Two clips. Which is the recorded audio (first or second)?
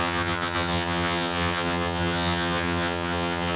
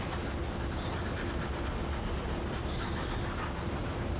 second